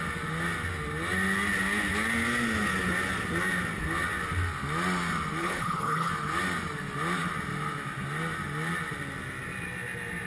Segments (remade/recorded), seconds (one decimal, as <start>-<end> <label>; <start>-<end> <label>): 0.0-5.4 recorded; 5.4-6.1 remade; 6.1-10.3 recorded